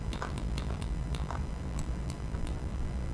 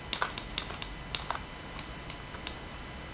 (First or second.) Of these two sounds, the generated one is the first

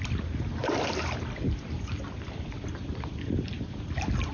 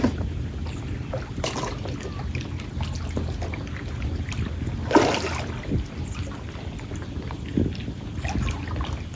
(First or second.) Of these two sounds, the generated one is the first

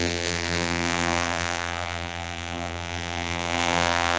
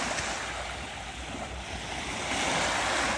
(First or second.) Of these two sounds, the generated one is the first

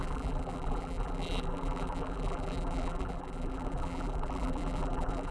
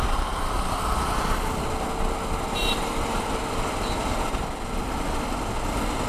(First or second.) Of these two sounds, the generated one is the first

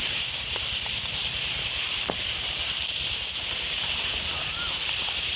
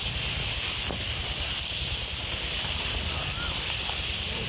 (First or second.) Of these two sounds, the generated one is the first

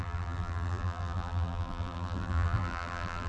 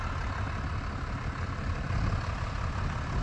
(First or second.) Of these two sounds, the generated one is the first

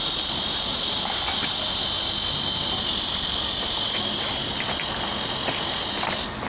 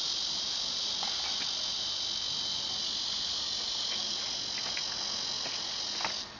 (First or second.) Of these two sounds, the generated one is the first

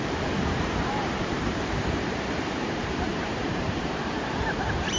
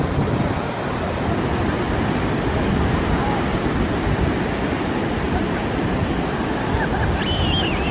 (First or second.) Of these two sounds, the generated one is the first